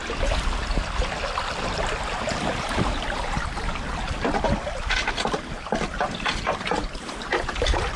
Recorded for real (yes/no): no